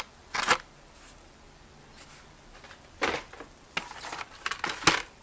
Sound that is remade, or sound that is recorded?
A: recorded